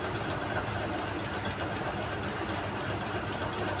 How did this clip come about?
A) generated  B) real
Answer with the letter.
B